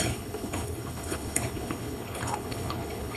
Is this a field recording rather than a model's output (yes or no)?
no